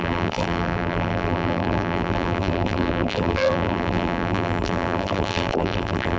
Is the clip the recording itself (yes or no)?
no